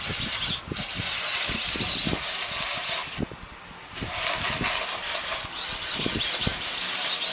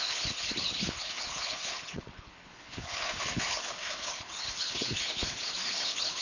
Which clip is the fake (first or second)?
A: second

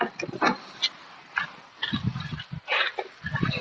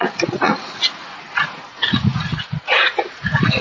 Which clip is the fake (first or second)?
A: second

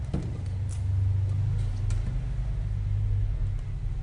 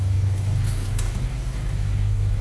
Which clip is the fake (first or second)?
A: second